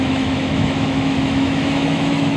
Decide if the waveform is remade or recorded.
remade